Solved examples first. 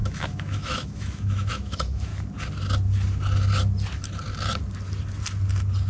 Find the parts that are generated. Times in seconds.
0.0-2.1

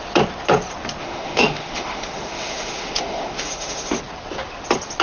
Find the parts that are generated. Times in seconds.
1.0-4.0

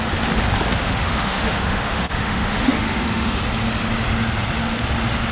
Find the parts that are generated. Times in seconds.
0.7-3.4